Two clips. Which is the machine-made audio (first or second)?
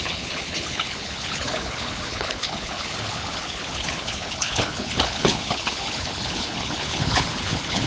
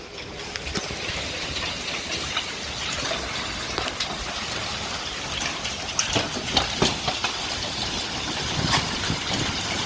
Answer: first